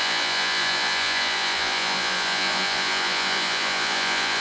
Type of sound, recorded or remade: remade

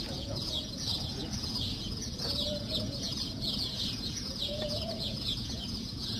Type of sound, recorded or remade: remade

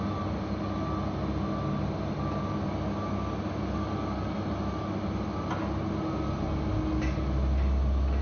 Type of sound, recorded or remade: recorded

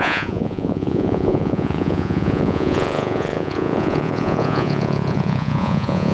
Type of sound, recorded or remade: remade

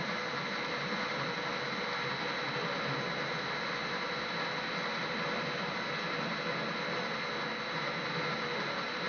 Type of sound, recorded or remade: recorded